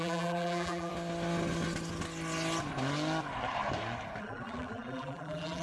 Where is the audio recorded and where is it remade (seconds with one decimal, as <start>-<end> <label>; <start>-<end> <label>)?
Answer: 0.0-0.9 remade; 0.9-4.2 recorded; 4.2-5.6 remade